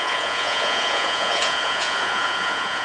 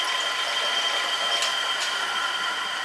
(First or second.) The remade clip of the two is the first